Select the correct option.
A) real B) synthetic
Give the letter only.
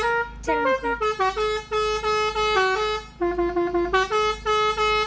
A